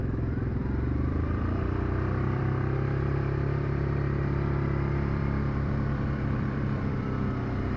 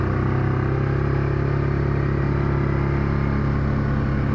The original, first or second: second